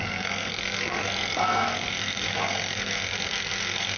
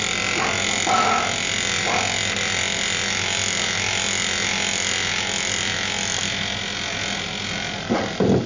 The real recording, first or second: second